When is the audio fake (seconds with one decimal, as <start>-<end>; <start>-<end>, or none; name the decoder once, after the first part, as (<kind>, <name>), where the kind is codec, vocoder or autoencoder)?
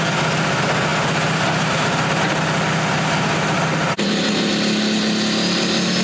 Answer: none